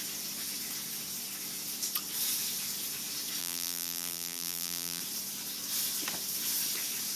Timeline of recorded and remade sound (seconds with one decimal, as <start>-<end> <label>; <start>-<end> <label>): 0.0-3.4 recorded; 3.4-5.0 remade; 5.0-7.2 recorded